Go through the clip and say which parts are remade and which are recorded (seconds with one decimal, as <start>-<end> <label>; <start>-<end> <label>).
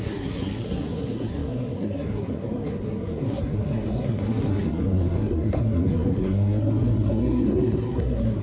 0.0-8.4 remade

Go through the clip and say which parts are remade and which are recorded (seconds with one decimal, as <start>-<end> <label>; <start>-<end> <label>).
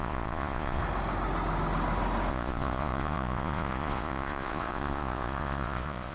0.0-0.8 remade; 0.8-2.3 recorded; 2.3-6.1 remade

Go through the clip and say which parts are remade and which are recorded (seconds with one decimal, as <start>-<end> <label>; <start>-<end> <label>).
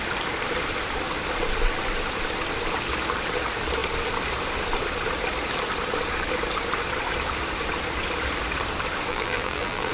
0.0-9.1 recorded; 9.1-9.9 remade